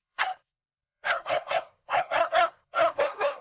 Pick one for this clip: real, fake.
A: fake